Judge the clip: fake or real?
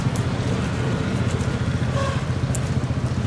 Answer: real